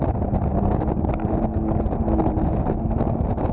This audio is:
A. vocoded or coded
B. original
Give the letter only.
B